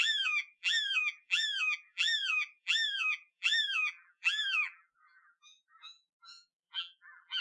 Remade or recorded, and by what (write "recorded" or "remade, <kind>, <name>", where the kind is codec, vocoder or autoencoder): remade, vocoder, BigVGAN v2